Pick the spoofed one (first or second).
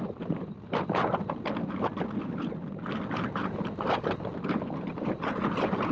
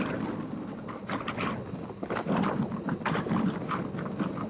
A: first